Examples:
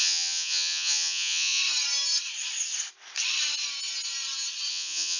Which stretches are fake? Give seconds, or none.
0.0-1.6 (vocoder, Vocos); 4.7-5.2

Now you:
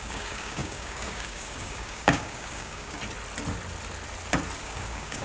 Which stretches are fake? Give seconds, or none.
0.0-3.0 (codec, DAC); 4.6-5.2

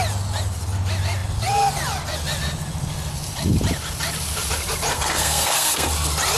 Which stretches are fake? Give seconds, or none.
4.9-5.9 (codec, SNAC)

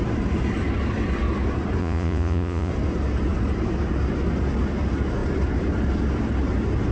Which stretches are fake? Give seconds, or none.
1.8-2.7 (vocoder, Vocos)

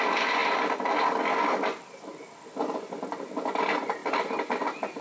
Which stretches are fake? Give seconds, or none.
none

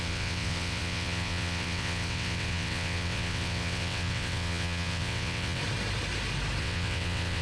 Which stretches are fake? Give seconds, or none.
0.0-5.6 (vocoder, WaveNeXt); 6.6-7.4

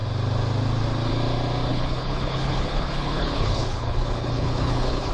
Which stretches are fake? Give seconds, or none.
1.7-5.1 (codec, HILCodec)

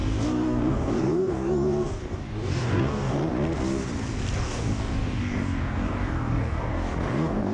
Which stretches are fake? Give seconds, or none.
0.0-3.2 (codec, DAC); 4.4-7.5